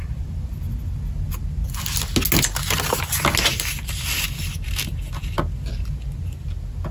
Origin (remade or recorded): recorded